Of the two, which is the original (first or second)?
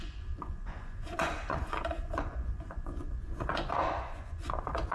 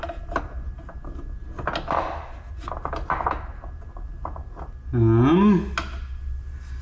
second